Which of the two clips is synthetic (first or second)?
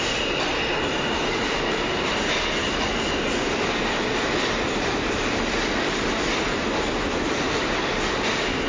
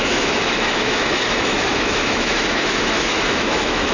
second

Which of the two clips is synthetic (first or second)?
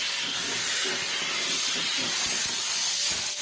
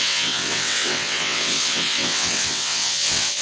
second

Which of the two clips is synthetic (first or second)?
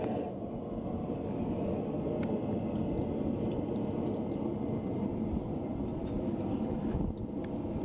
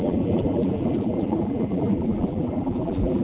second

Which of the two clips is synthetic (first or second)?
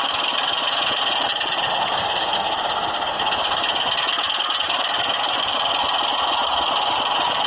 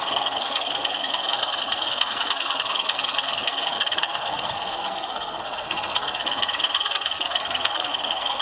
second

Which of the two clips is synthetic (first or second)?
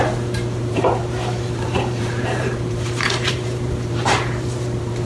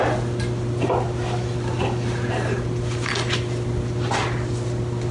first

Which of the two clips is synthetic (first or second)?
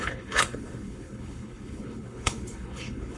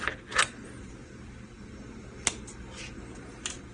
first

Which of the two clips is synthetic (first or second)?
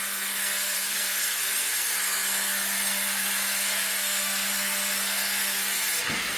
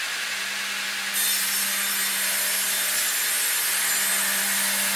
first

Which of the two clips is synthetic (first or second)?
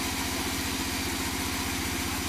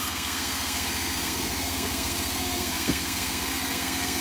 second